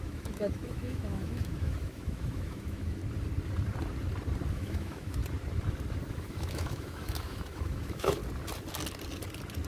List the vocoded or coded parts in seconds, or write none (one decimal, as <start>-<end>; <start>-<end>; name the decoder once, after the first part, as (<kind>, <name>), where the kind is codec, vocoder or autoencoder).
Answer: 0.0-3.0 (autoencoder, DAC-VAE); 4.5-5.2; 6.1-8.2